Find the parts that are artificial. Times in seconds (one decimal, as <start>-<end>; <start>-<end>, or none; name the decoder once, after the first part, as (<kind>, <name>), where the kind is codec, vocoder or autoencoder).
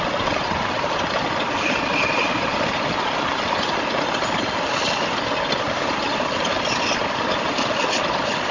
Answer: none